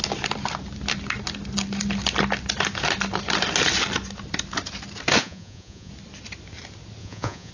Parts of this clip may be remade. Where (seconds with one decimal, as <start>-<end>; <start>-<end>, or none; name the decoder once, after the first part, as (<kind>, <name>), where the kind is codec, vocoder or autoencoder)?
5.2-5.9 (vocoder, Vocos); 7.0-7.5